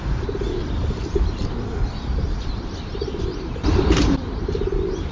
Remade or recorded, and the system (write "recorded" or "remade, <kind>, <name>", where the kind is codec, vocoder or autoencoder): remade, vocoder, BigVGAN v2